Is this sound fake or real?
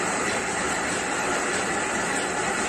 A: fake